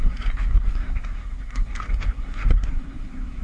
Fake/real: fake